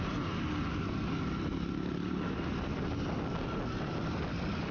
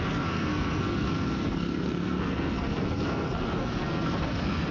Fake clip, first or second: second